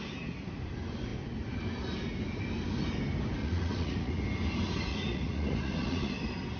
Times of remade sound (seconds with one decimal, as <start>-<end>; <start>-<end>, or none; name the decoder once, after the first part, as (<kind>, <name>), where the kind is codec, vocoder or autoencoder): 3.4-4.2 (vocoder, Vocos); 4.9-6.1